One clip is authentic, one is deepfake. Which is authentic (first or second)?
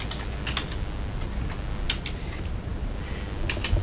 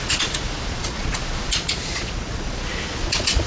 first